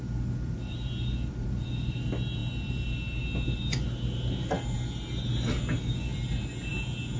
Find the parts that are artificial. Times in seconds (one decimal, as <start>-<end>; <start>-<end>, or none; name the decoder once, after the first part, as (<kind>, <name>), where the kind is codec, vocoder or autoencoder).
none